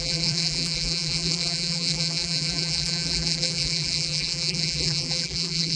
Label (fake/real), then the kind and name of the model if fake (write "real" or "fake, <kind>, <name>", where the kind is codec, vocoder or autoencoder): fake, vocoder, BigVGAN v2